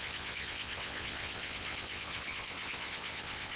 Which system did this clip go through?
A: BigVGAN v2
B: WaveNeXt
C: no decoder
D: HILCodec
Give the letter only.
B